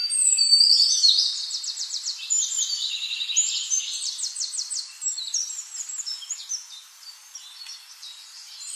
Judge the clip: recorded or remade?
remade